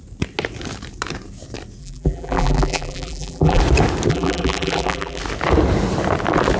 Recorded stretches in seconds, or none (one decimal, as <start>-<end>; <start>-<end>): 0.0-1.8; 3.6-4.1; 5.2-6.6